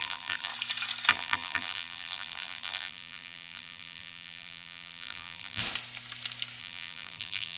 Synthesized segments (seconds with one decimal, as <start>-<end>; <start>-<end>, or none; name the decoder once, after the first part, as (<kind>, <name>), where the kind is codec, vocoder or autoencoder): 0.0-0.5 (vocoder, BigVGAN v2); 1.1-5.6; 6.6-7.6